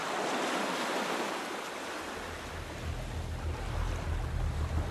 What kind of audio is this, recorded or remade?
recorded